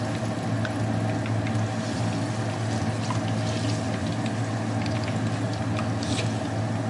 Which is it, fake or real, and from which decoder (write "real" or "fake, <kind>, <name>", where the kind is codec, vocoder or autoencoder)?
real